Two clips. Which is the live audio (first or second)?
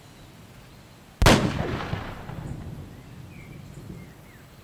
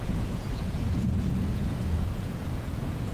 first